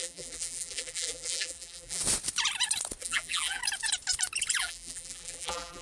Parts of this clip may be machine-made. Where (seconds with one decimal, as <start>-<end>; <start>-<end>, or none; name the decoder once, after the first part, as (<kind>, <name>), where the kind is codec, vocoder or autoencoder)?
0.0-2.0 (vocoder, BigVGAN v2); 3.0-3.6; 4.6-5.8